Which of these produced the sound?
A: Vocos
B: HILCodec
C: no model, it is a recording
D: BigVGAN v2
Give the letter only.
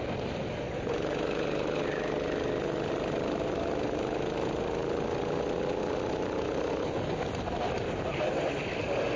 C